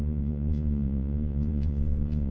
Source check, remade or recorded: remade